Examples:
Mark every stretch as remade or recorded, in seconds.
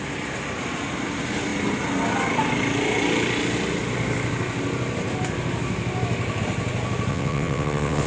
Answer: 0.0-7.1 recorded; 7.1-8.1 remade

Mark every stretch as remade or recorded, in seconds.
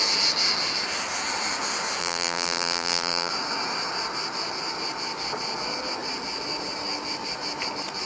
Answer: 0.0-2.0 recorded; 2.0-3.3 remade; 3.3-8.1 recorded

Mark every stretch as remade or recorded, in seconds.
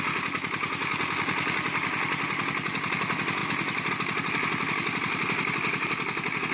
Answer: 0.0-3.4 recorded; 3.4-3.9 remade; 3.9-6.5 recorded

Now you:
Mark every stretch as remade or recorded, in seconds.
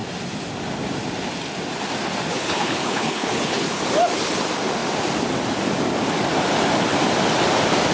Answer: 0.0-2.3 recorded; 2.3-3.8 remade; 3.8-7.9 recorded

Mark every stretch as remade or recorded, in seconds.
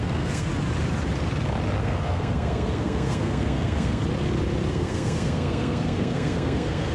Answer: 0.0-0.5 remade; 0.5-1.8 recorded; 1.8-4.0 remade; 4.0-4.7 recorded; 4.7-6.9 remade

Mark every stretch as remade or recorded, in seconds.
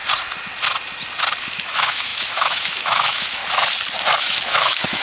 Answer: 0.0-1.4 recorded; 1.4-3.4 remade; 3.4-4.2 recorded; 4.2-5.0 remade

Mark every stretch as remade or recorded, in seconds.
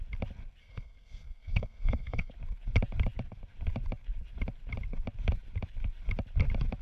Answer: 0.0-0.6 recorded; 0.6-2.3 remade; 2.3-6.8 recorded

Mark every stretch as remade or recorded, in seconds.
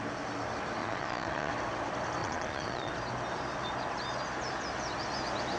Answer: 0.0-0.8 recorded; 0.8-1.5 remade; 1.5-2.2 recorded; 2.2-2.9 remade; 2.9-5.6 recorded